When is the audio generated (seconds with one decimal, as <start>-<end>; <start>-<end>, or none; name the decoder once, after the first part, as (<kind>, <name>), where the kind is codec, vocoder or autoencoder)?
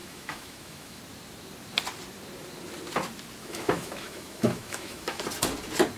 0.0-1.0 (autoencoder, DAC-VAE); 3.4-5.2